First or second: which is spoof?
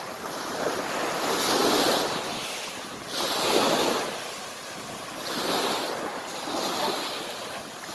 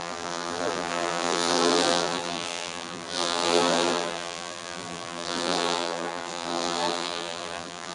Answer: second